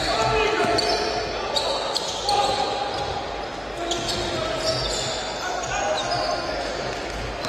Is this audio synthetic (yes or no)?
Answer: no